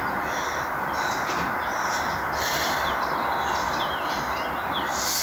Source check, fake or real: real